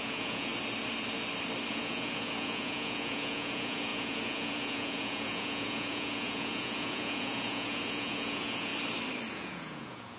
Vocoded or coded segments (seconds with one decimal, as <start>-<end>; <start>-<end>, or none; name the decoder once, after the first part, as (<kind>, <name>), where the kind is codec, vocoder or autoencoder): 0.0-0.5 (vocoder, Vocos); 1.7-8.7; 9.3-10.2